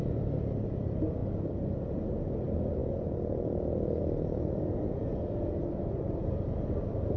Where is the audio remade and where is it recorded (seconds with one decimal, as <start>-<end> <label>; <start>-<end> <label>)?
0.0-7.2 recorded